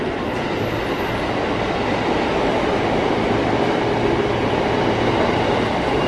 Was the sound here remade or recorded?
recorded